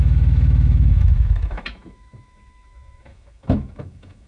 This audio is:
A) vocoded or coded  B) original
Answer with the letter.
A